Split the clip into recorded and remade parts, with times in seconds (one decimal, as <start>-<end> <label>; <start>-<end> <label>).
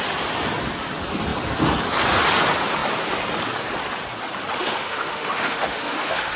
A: 0.0-4.6 recorded; 4.6-6.4 remade